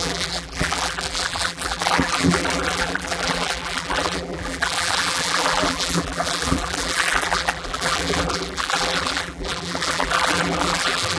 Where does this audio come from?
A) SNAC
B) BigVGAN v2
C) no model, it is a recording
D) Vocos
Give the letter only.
B